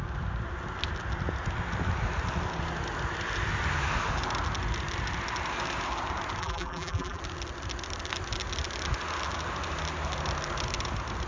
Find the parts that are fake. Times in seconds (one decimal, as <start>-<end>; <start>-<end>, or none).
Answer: 6.4-7.2